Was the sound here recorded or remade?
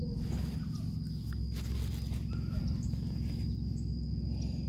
recorded